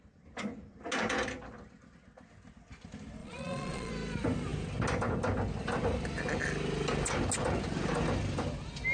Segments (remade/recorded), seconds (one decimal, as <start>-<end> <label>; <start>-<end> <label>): 0.0-3.2 recorded; 3.2-3.9 remade; 3.9-8.9 recorded